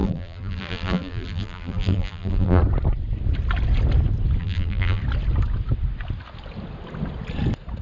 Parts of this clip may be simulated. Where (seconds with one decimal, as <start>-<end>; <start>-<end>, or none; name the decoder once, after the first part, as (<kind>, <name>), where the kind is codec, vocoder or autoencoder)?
0.0-2.6 (vocoder, BigVGAN v2); 4.4-5.0